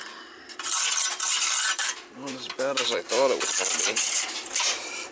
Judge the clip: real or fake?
fake